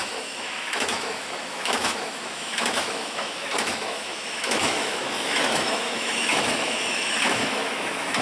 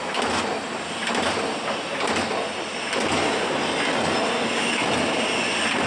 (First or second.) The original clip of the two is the second